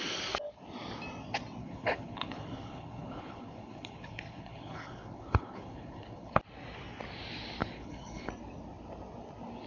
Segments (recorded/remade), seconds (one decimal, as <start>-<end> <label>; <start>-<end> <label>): 0.0-1.6 recorded; 1.6-6.4 remade; 6.4-7.6 recorded; 7.6-8.3 remade; 8.3-9.7 recorded